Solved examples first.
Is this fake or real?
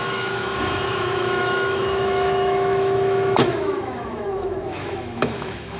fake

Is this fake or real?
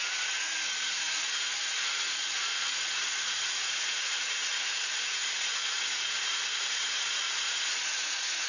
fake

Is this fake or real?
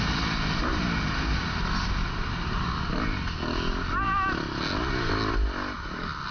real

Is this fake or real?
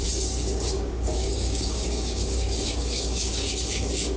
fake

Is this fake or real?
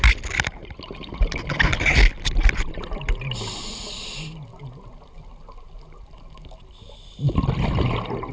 real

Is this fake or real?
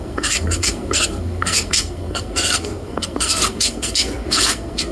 fake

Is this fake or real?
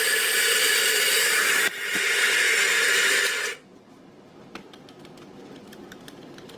fake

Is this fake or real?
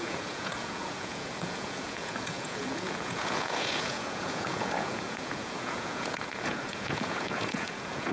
fake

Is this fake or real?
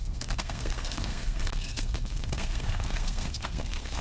fake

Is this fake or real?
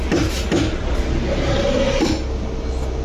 real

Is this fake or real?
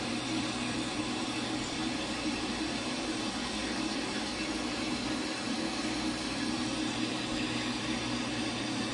fake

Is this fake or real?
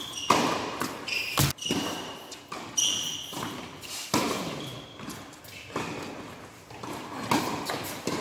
real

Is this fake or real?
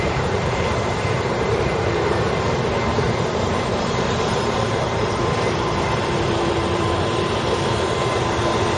fake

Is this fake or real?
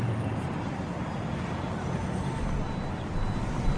real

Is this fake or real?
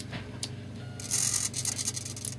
real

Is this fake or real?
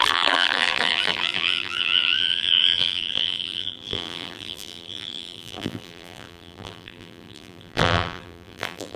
fake